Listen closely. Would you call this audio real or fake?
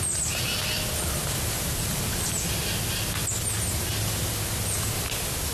real